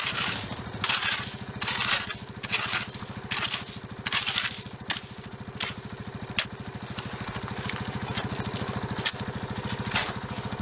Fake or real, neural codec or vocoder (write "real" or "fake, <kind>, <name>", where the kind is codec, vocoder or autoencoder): real